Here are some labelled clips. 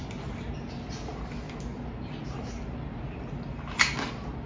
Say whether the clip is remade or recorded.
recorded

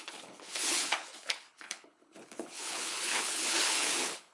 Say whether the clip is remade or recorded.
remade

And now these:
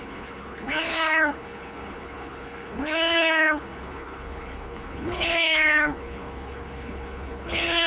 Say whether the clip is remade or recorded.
remade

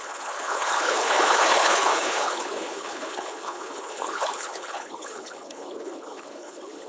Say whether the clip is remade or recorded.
remade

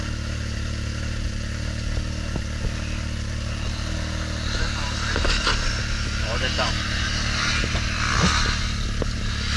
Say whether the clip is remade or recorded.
recorded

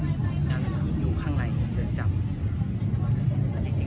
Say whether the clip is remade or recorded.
recorded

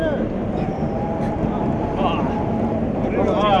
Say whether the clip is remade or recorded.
recorded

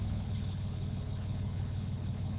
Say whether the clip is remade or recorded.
remade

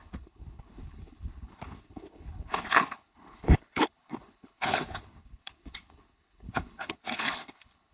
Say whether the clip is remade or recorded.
remade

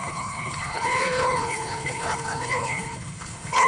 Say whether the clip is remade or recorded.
remade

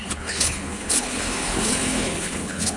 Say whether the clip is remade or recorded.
remade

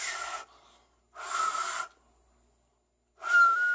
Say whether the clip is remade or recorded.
recorded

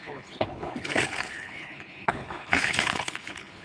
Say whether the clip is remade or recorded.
remade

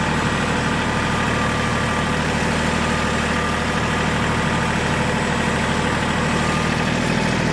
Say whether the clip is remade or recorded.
recorded